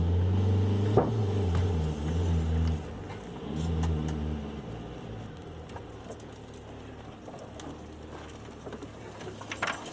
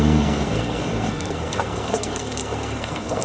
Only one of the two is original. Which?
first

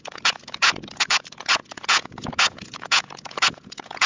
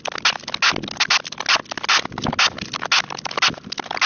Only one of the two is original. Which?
second